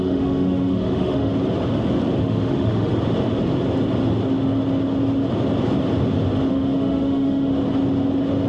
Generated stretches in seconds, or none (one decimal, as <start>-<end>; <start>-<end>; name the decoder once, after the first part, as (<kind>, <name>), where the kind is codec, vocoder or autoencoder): 0.0-1.3 (autoencoder, DAC-VAE); 2.2-2.9; 6.5-7.5